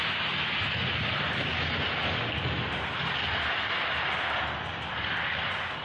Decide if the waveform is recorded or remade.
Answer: recorded